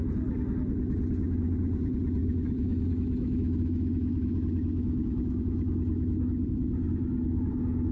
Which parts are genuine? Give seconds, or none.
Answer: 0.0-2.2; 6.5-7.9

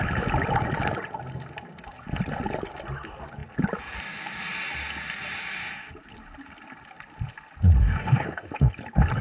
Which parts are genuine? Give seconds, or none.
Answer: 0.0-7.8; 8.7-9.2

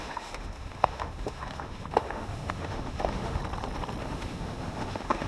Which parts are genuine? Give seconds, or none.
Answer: 3.4-4.0

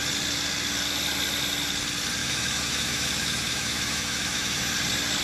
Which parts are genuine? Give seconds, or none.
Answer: 0.0-2.2; 4.7-5.2

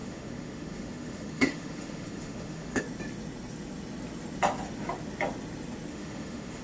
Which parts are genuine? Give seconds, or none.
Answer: 2.8-5.9

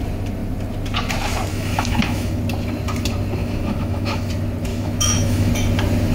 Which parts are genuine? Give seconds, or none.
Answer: 0.0-1.5; 2.4-3.4; 4.3-4.7; 5.5-6.1

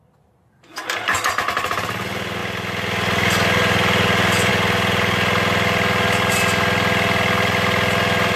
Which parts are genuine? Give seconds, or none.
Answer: 0.0-8.4